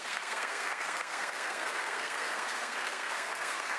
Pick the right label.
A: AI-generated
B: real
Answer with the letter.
A